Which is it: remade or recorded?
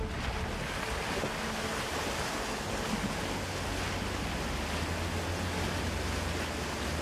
recorded